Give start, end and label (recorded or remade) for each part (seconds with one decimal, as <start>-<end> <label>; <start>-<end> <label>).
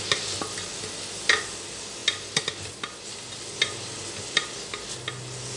0.0-5.6 recorded